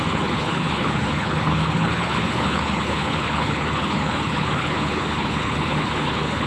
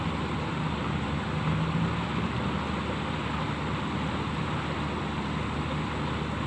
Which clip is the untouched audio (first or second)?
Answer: second